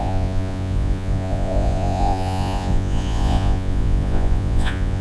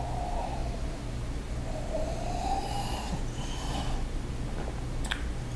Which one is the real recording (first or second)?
second